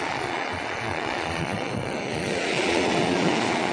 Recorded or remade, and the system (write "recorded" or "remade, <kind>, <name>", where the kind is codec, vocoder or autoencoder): remade, vocoder, Vocos